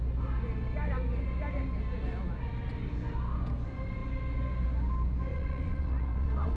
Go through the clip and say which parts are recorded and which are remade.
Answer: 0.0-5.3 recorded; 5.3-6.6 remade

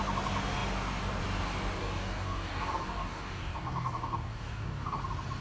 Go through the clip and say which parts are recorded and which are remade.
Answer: 0.0-1.8 recorded; 1.8-5.0 remade; 5.0-5.4 recorded

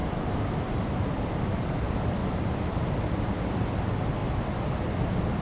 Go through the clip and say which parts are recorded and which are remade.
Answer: 0.0-1.2 remade; 1.2-2.2 recorded; 2.2-3.5 remade; 3.5-5.4 recorded